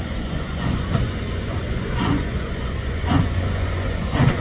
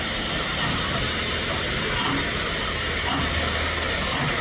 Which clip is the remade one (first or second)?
first